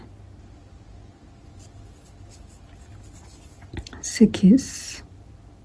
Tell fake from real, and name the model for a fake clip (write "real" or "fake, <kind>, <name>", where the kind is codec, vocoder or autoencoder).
real